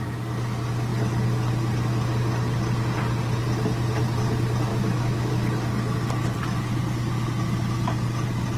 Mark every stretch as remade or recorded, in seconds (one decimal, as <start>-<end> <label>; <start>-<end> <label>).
0.0-4.7 recorded; 4.7-5.3 remade; 5.3-8.6 recorded

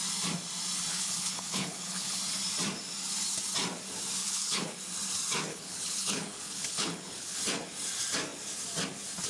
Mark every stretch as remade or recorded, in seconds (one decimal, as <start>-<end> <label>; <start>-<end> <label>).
0.0-0.9 recorded; 0.9-2.2 remade; 2.2-4.2 recorded; 4.2-4.8 remade; 4.8-5.5 recorded; 5.5-7.4 remade; 7.4-9.3 recorded

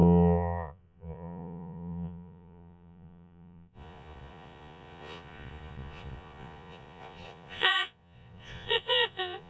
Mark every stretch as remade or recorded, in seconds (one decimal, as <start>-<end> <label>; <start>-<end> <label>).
0.0-9.5 remade